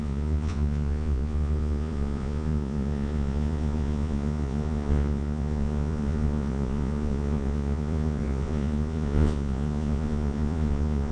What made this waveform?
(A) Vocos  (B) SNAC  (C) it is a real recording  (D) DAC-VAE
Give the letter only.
A